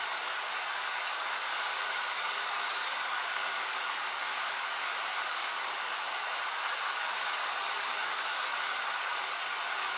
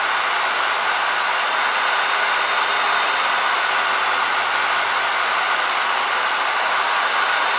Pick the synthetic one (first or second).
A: first